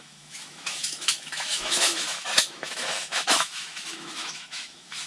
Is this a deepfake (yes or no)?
yes